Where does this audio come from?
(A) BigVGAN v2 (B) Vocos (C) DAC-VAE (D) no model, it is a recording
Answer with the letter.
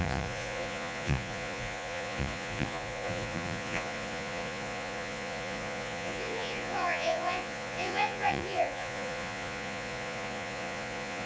B